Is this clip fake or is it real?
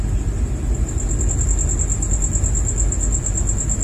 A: real